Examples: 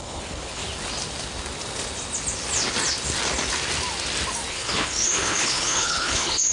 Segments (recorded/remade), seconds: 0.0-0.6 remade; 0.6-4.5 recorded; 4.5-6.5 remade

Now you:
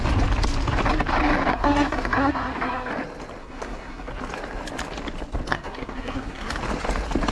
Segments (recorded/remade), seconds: 0.0-1.5 recorded; 1.5-2.9 remade; 2.9-3.4 recorded; 3.4-4.1 remade; 4.1-5.5 recorded; 5.5-6.5 remade; 6.5-7.3 recorded

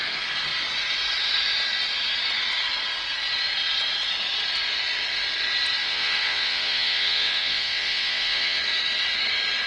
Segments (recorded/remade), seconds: 0.0-5.8 recorded; 5.8-8.6 remade; 8.6-9.7 recorded

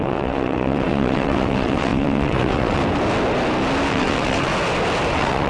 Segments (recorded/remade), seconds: 0.0-2.8 remade; 2.8-3.9 recorded; 3.9-4.5 remade; 4.5-5.1 recorded; 5.1-5.5 remade

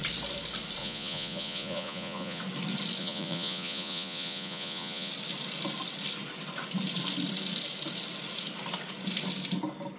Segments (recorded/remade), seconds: 0.0-0.8 recorded; 0.8-2.4 remade; 2.4-3.0 recorded; 3.0-5.1 remade; 5.1-10.0 recorded

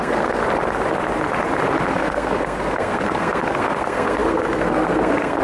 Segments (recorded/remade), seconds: 0.0-0.4 remade; 0.4-1.9 recorded; 1.9-5.4 remade

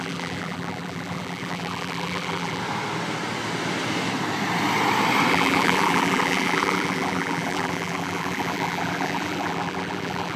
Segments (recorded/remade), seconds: 0.0-2.6 remade; 2.6-5.3 recorded; 5.3-10.4 remade